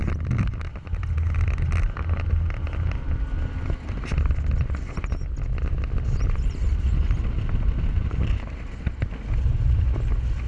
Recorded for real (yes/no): yes